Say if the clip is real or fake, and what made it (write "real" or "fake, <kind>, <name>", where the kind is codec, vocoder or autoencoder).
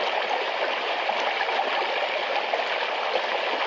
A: real